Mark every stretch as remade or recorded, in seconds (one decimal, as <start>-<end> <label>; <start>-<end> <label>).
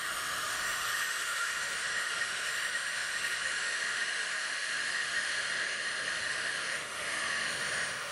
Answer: 0.0-8.1 remade